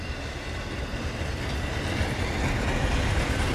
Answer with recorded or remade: recorded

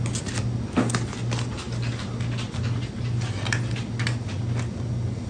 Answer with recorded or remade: recorded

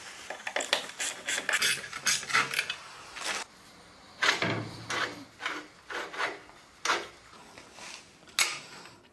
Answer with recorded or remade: recorded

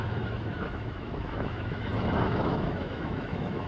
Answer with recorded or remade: remade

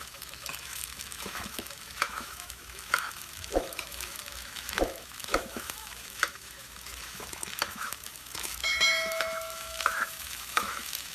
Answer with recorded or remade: remade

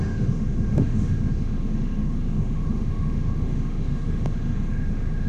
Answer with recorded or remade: remade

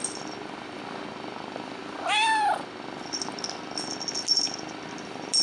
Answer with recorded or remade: recorded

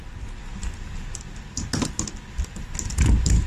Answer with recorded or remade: recorded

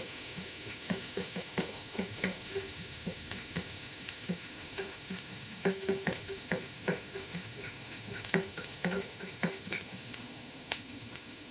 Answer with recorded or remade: remade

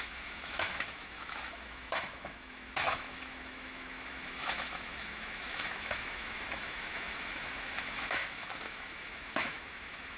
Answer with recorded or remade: remade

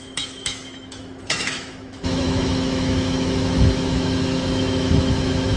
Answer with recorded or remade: remade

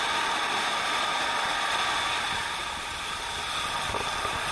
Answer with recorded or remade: recorded